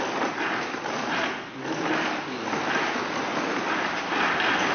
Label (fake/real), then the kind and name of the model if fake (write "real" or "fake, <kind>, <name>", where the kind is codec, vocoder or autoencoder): real